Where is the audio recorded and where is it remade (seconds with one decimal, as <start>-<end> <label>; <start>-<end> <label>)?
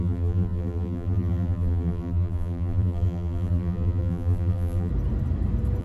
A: 0.0-4.9 remade; 4.9-5.8 recorded